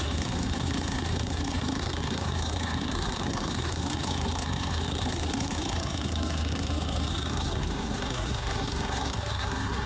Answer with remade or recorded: remade